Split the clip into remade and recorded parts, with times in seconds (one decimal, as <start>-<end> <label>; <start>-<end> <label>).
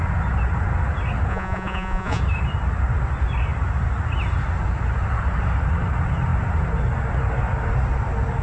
0.0-1.3 recorded; 1.3-2.2 remade; 2.2-8.4 recorded